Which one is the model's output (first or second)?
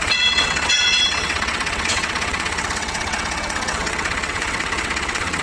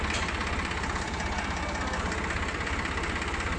first